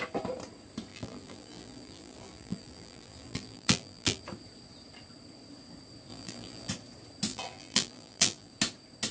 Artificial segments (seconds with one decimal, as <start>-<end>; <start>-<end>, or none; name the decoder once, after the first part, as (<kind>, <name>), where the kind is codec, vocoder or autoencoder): 0.9-4.2 (vocoder, BigVGAN v2); 6.1-6.7; 7.3-8.5